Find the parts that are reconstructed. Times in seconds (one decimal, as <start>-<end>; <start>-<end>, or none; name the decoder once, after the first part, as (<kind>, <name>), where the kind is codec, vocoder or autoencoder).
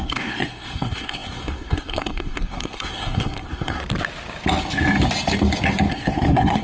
0.0-3.8 (codec, SNAC); 5.9-6.6